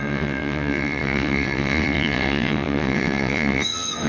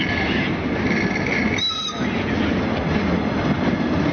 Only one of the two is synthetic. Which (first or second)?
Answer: first